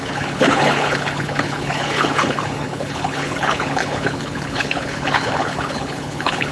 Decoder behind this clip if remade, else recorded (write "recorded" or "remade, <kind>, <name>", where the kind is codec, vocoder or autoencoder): remade, codec, HILCodec